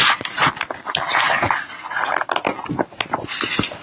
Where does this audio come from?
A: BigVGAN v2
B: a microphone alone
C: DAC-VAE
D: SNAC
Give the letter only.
B